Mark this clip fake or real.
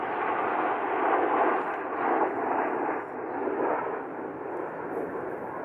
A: real